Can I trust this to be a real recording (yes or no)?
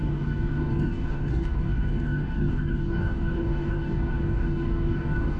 no